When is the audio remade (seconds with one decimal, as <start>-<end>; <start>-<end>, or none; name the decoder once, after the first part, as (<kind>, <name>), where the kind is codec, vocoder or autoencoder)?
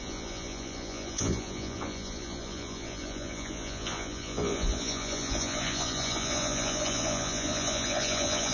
0.0-8.5 (vocoder, Vocos)